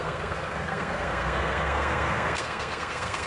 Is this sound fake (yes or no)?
yes